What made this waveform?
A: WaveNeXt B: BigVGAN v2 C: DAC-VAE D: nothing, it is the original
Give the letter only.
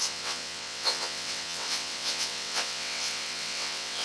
A